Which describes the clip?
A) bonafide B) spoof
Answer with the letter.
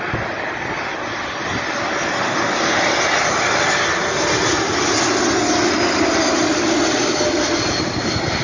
A